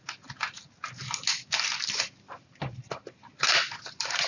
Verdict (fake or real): real